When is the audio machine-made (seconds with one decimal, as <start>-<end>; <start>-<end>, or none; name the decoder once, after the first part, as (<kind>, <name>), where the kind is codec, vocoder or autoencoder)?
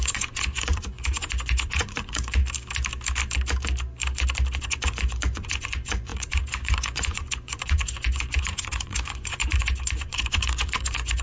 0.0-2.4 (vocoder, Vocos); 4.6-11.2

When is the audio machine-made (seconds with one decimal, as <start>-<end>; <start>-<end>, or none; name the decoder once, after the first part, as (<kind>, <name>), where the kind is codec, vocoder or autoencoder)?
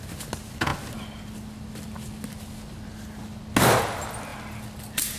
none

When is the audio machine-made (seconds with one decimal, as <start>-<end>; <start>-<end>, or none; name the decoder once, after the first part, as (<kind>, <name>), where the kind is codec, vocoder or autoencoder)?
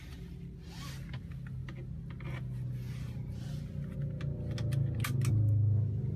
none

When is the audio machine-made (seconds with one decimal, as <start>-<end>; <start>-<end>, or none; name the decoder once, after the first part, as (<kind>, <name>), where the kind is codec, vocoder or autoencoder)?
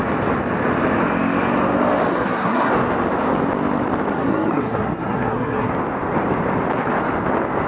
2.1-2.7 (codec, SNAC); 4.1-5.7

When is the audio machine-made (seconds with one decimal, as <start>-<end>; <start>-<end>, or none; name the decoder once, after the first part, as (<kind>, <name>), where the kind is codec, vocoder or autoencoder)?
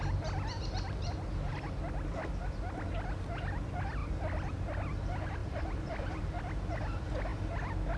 5.4-6.2 (vocoder, BigVGAN v2)